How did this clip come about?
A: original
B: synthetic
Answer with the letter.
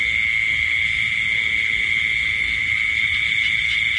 A